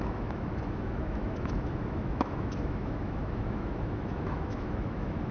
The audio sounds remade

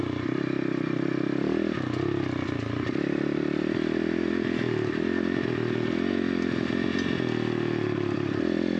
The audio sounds recorded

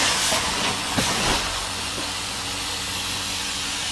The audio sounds remade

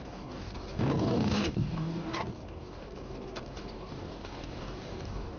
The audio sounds remade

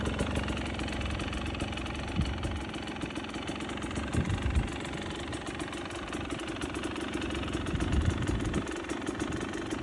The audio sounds recorded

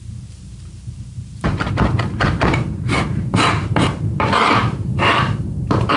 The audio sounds remade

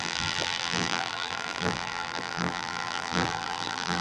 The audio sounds remade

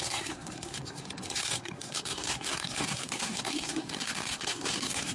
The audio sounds remade